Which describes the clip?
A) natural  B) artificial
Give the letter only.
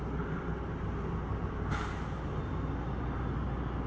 A